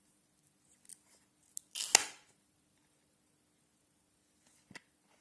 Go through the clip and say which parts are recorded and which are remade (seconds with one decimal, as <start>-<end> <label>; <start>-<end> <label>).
0.0-5.2 recorded